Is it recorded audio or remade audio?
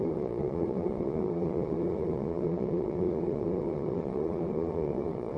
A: remade